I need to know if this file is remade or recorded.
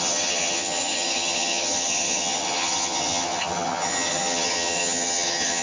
remade